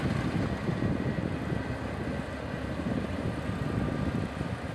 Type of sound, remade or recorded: recorded